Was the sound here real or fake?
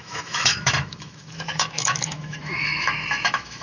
fake